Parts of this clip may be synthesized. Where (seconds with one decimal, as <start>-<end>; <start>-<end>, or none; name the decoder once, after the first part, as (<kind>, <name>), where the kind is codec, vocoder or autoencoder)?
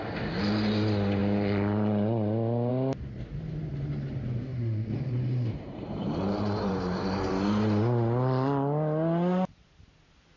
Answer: 4.5-7.3 (vocoder, BigVGAN v2)